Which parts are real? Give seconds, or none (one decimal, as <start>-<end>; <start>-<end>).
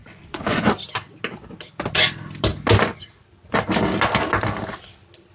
0.6-5.3